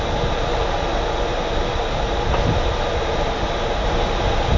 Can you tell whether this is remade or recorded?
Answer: recorded